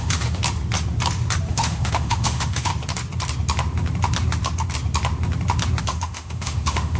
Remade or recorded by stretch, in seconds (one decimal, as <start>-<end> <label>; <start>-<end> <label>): 0.0-0.4 remade; 0.4-1.5 recorded; 1.5-2.7 remade; 2.7-5.8 recorded; 5.8-7.0 remade